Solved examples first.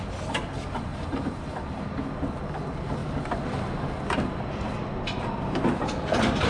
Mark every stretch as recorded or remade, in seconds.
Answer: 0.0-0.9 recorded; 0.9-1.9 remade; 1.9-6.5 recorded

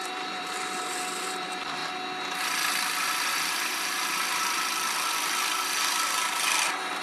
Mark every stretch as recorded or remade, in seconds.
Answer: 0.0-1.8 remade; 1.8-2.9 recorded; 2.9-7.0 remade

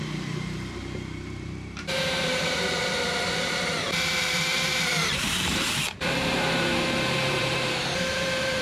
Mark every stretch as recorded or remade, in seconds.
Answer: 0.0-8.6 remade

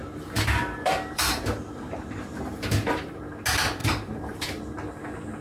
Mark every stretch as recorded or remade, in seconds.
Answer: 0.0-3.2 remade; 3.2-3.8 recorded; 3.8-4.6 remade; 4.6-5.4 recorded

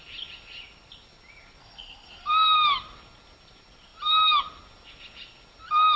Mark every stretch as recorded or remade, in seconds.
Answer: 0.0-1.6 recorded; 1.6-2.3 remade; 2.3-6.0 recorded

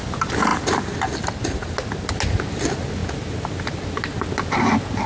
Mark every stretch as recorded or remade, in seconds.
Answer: 0.0-5.1 recorded

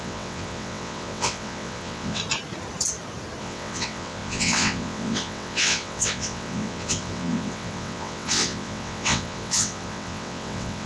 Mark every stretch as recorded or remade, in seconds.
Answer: 0.0-2.2 remade; 2.2-3.4 recorded; 3.4-10.9 remade